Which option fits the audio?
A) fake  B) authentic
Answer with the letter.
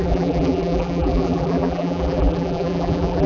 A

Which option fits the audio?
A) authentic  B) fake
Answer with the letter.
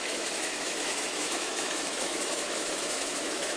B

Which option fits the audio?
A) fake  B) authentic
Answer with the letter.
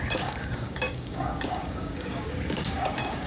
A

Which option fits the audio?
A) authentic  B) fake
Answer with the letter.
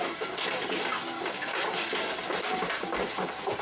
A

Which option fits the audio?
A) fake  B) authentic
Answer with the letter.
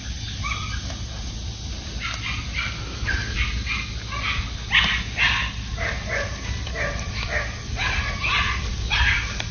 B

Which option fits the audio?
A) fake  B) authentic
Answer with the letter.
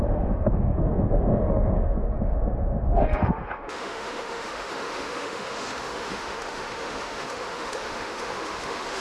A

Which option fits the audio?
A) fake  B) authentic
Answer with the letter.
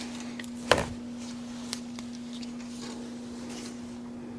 B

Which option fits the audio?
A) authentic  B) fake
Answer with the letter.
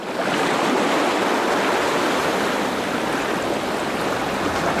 A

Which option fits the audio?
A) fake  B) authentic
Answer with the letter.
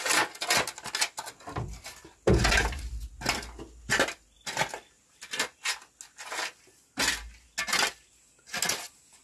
B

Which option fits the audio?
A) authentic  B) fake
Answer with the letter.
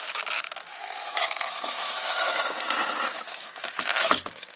B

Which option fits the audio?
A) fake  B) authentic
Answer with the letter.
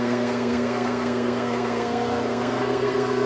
A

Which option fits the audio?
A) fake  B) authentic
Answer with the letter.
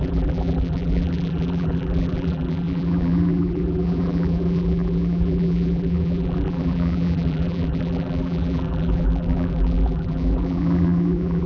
A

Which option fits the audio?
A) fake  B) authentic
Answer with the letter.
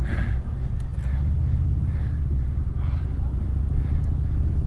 B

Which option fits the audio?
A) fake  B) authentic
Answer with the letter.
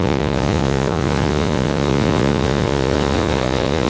A